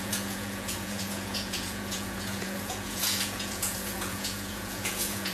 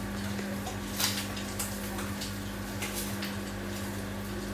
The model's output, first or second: first